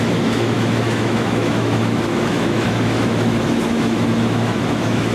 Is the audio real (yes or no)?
no